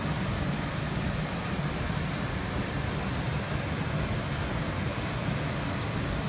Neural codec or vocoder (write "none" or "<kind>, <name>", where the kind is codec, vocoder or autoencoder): none